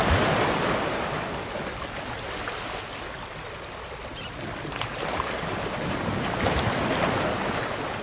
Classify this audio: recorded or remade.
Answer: recorded